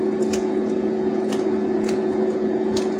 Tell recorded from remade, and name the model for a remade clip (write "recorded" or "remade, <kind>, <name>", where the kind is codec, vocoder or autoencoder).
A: remade, vocoder, Vocos